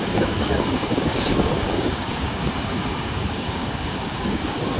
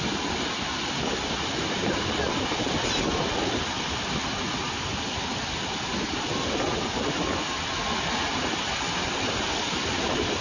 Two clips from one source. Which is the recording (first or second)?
second